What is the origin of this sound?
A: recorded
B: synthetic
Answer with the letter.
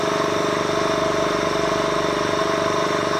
A